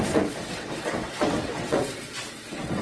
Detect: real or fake fake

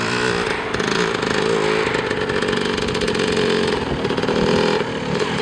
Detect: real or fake real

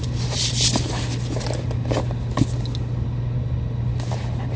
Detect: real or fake real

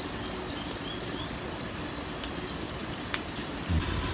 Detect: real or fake real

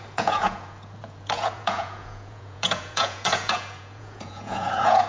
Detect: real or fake fake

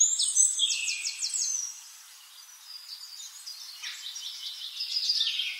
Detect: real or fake real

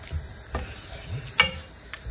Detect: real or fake real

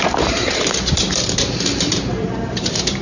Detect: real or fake fake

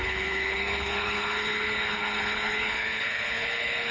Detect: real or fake fake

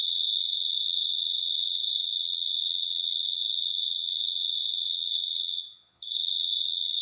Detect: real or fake fake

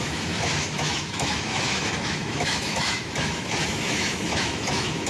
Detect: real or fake fake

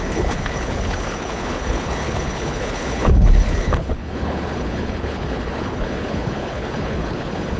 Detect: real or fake fake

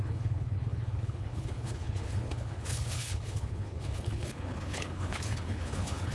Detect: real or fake fake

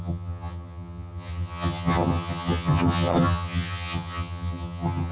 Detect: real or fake fake